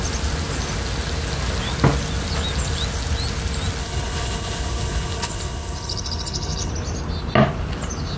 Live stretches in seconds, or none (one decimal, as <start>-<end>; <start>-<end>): 0.0-3.8; 6.7-8.2